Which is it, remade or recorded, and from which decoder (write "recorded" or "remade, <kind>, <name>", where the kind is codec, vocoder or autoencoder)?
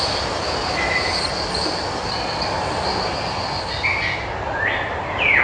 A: recorded